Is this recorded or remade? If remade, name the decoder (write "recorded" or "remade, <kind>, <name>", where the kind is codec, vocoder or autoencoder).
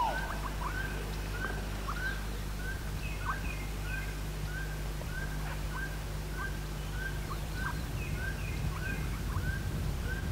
remade, vocoder, BigVGAN v2